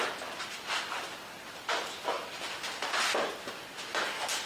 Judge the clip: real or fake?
real